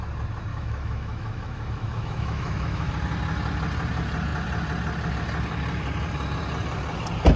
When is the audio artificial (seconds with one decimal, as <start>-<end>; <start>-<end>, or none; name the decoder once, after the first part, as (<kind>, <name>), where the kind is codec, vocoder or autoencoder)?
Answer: 0.5-2.9 (autoencoder, DAC-VAE)